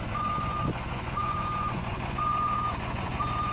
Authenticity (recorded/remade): remade